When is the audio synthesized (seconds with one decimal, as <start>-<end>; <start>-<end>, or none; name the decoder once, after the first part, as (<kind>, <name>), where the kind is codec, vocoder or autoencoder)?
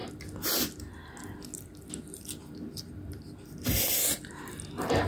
none